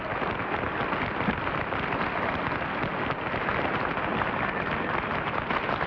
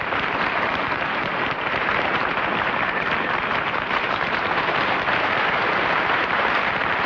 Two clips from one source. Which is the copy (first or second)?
second